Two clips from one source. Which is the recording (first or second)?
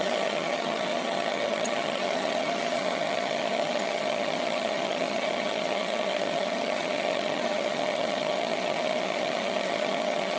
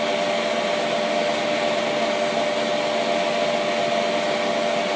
second